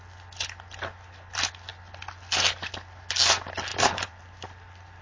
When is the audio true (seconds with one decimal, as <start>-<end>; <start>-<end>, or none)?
0.0-3.7; 4.2-5.0